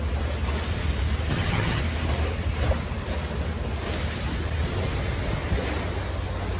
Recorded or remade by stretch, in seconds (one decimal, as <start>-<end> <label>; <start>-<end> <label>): 0.0-1.3 recorded; 1.3-1.8 remade; 1.8-6.6 recorded